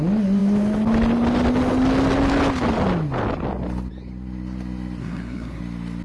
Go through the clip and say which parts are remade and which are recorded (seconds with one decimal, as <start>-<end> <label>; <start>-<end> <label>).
0.0-5.0 recorded; 5.0-5.6 remade; 5.6-6.0 recorded